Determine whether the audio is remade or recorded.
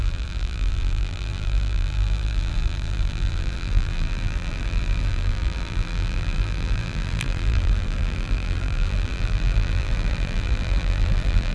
remade